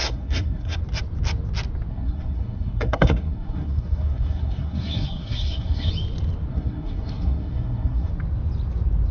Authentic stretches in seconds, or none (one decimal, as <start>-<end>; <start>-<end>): 0.8-1.9; 5.9-6.5; 8.1-9.1